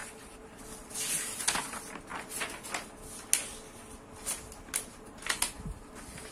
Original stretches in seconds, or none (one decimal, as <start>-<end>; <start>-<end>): 0.6-6.3